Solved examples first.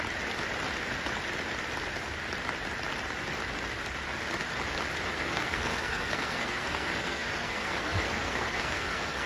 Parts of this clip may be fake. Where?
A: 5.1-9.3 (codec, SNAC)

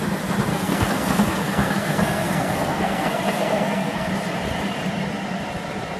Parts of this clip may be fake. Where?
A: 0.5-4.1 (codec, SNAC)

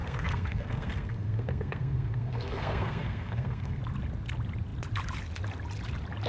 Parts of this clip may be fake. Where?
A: 0.0-3.8 (codec, SNAC)

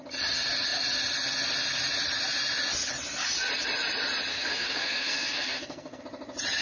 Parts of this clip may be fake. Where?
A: 4.3-6.0 (codec, SNAC)

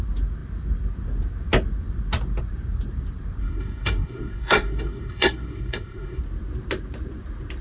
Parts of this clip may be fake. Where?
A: 3.4-6.2 (codec, SNAC)